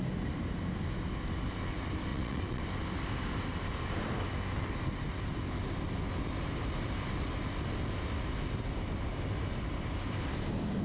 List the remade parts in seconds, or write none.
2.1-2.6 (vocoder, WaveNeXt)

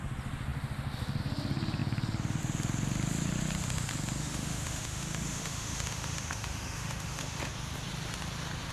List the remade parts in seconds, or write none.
4.2-7.5 (autoencoder, DAC-VAE)

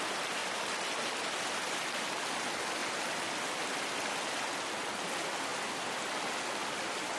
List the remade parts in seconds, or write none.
none